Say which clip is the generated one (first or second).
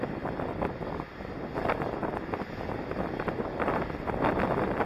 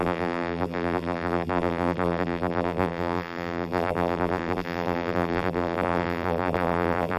second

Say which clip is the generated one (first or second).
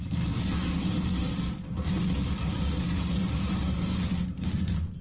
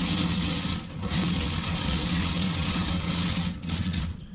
second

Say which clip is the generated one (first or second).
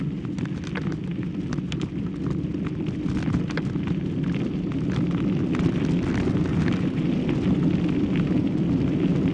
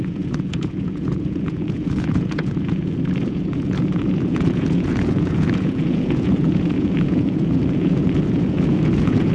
second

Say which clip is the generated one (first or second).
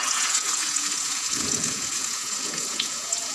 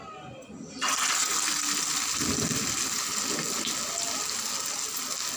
first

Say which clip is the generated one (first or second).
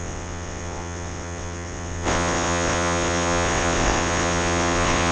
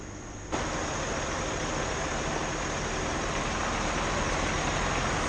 first